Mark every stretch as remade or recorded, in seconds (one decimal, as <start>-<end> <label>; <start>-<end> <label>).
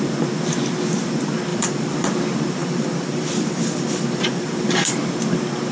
0.0-1.5 recorded; 1.5-2.2 remade; 2.2-2.6 recorded; 2.6-4.9 remade; 4.9-5.7 recorded